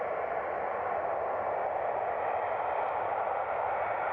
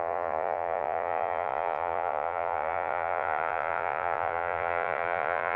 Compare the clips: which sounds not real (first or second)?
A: second